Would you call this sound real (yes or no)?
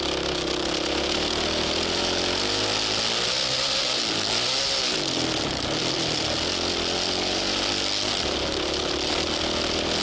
yes